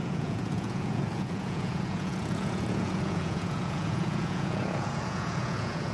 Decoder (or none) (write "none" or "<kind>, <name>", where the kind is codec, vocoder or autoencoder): vocoder, Vocos